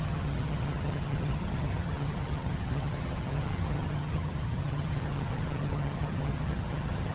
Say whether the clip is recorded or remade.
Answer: remade